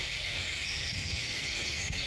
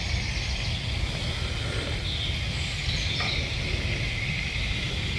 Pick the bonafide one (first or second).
second